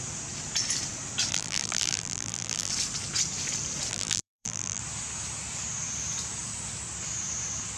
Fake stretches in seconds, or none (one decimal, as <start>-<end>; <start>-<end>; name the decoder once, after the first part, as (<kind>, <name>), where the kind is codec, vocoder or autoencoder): 1.3-2.7 (vocoder, BigVGAN v2); 3.9-4.8